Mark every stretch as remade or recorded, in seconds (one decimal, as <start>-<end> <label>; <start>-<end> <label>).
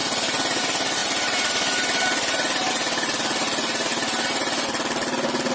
0.0-5.5 recorded